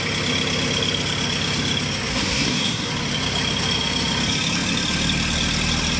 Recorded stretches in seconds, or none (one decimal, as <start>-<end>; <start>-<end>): 0.0-2.1; 2.9-6.0

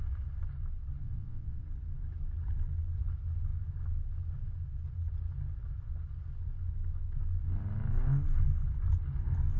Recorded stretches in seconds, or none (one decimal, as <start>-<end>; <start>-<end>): 0.0-1.0; 1.6-9.6